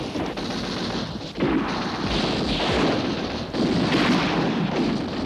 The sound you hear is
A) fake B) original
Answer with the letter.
B